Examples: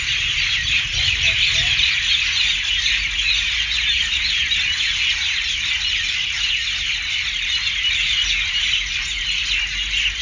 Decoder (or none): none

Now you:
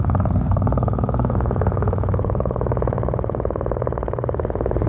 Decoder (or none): autoencoder, DAC-VAE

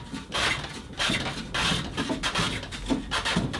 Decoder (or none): none